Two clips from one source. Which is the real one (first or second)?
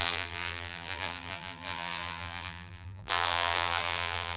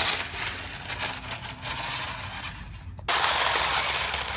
second